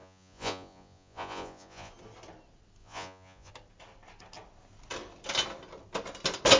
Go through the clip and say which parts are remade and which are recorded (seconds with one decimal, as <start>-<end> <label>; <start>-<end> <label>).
0.0-1.9 remade; 1.9-2.8 recorded; 2.8-3.5 remade; 3.5-6.6 recorded